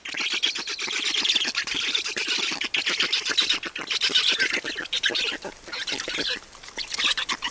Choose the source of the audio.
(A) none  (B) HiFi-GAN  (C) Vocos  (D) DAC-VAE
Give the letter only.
A